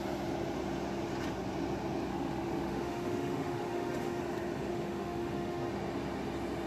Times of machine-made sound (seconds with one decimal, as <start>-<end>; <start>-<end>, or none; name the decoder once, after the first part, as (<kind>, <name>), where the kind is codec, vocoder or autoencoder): 2.1-4.2 (autoencoder, DAC-VAE); 4.7-5.7